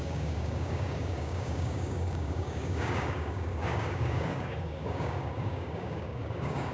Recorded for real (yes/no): no